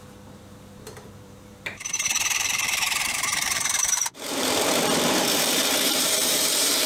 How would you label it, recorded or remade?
remade